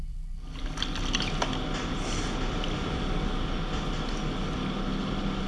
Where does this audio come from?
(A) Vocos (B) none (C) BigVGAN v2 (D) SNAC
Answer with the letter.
B